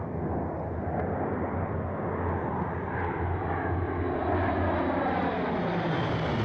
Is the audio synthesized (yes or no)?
no